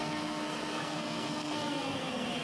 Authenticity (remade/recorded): remade